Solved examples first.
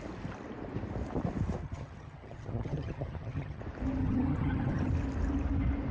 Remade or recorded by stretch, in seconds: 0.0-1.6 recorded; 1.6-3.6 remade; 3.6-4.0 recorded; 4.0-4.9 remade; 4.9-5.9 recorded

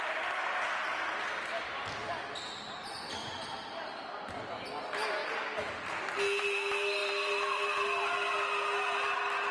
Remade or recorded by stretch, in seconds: 0.0-3.2 recorded; 3.2-4.1 remade; 4.1-7.0 recorded; 7.0-8.0 remade; 8.0-9.5 recorded